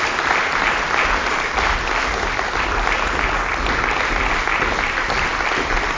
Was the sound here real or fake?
real